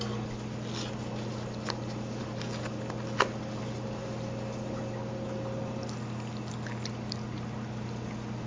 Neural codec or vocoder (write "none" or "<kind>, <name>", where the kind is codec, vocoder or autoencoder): none